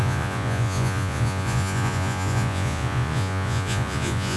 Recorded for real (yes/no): no